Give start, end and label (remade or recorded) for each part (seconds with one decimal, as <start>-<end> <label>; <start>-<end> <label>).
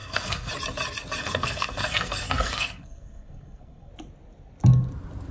0.0-0.5 remade; 0.5-1.2 recorded; 1.2-3.9 remade; 3.9-5.3 recorded